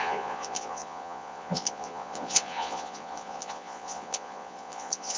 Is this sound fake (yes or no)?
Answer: yes